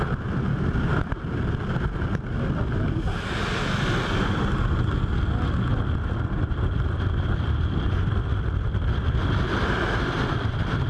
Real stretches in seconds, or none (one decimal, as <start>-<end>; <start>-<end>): 0.0-10.9